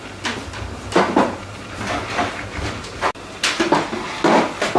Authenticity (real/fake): real